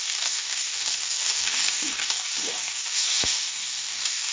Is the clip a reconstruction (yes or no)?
yes